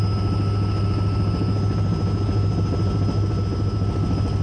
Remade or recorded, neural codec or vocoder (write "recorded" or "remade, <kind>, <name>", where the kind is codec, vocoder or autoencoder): recorded